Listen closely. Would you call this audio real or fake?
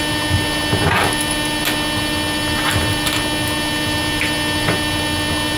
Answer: real